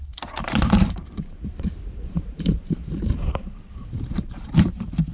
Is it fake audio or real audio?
fake